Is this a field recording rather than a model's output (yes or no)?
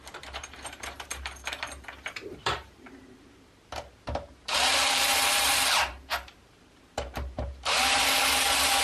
no